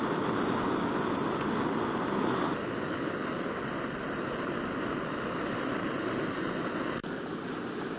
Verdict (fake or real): real